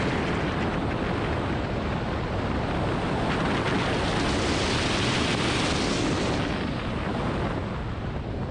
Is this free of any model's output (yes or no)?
yes